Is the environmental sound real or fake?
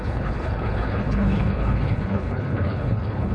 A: fake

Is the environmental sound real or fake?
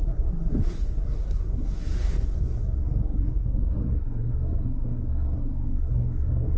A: fake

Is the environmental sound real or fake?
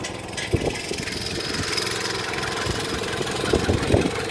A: real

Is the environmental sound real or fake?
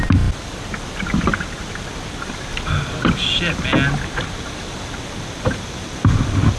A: real